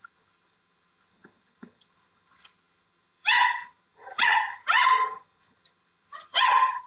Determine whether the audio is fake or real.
fake